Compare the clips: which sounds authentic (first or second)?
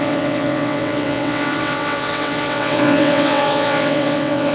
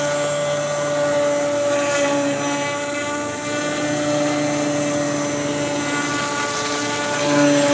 second